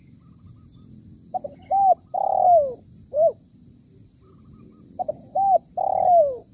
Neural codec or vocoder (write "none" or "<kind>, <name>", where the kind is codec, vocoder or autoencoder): none